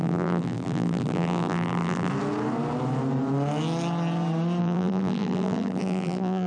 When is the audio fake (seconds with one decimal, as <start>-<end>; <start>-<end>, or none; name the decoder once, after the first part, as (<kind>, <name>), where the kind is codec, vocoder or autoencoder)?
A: 0.0-2.1 (vocoder, BigVGAN v2); 4.6-6.5

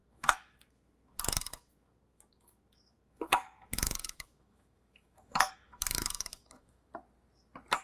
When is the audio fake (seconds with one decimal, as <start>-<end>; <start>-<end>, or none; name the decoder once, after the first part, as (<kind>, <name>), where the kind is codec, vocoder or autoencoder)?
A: 0.0-6.9 (autoencoder, DAC-VAE)

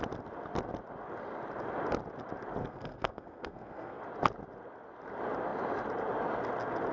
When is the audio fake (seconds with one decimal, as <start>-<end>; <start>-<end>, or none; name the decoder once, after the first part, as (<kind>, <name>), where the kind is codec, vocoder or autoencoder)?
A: 2.6-4.0 (codec, SNAC)

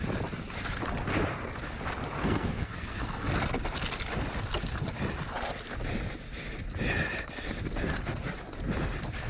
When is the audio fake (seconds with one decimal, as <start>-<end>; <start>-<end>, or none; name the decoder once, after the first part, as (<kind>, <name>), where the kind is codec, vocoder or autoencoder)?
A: 2.2-3.3 (codec, SNAC)

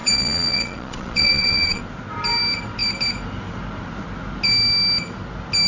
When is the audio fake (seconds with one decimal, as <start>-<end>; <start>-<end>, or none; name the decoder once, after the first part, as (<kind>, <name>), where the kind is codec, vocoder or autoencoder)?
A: 0.0-1.8 (vocoder, Vocos)

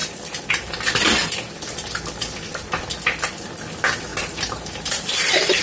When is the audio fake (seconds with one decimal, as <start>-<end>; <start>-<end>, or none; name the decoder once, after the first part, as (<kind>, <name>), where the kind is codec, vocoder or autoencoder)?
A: 4.1-5.6 (vocoder, BigVGAN v2)

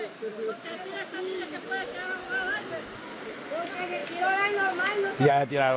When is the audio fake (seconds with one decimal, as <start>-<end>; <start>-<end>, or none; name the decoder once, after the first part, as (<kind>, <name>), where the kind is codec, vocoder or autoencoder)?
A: none

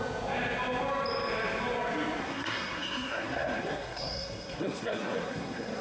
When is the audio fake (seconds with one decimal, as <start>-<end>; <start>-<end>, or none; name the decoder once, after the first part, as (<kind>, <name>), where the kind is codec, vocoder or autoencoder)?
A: 2.2-5.8 (codec, SNAC)